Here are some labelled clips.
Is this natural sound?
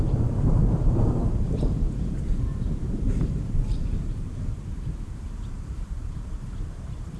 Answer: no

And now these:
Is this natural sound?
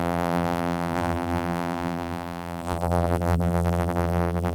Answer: no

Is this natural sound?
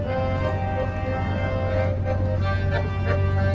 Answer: yes